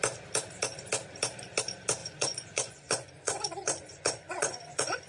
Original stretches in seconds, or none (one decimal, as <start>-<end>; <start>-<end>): 0.0-2.0